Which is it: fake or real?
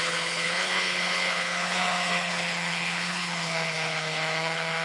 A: fake